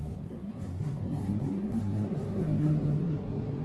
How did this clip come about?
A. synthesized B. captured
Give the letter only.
A